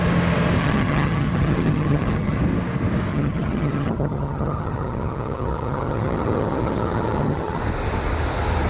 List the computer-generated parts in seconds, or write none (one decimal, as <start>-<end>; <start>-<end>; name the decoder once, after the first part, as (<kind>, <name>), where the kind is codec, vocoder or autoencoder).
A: 0.6-2.4 (vocoder, HiFi-GAN); 3.1-7.6